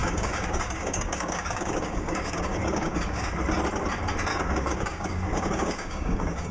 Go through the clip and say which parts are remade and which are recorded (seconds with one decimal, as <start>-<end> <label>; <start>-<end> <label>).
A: 0.0-3.3 remade; 3.3-4.3 recorded; 4.3-6.5 remade